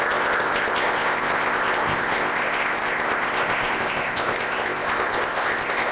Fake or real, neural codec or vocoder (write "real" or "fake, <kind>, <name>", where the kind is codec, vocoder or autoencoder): fake, codec, ZipCodec